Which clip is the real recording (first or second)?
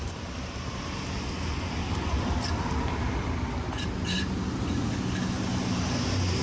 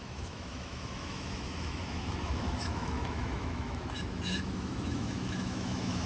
first